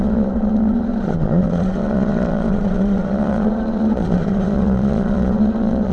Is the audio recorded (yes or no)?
no